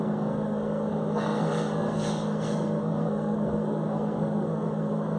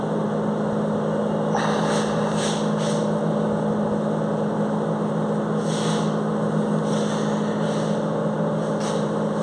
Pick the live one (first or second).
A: second